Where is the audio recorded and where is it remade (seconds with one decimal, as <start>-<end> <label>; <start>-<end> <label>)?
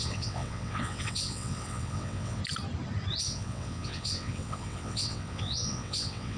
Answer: 0.0-2.4 remade; 2.4-3.2 recorded; 3.2-6.4 remade